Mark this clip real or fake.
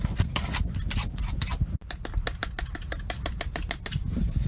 real